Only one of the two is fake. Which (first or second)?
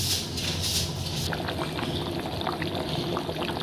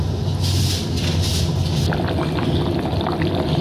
second